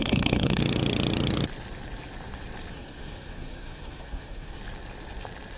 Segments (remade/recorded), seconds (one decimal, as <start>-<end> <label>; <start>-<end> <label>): 0.0-0.6 remade; 0.6-2.7 recorded; 2.7-4.6 remade; 4.6-5.6 recorded